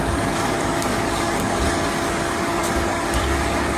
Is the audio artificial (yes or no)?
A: yes